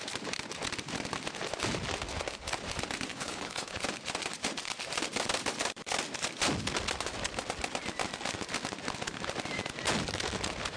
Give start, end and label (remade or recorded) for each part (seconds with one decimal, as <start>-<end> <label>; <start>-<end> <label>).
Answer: 0.0-3.1 recorded; 3.1-3.8 remade; 3.8-10.8 recorded